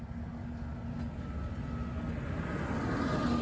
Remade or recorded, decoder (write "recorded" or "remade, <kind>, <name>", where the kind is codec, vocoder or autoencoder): recorded